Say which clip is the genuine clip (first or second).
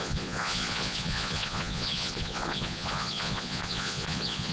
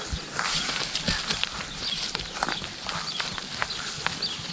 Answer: second